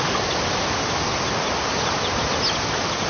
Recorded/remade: recorded